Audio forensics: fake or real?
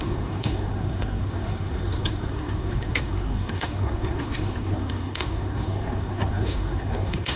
fake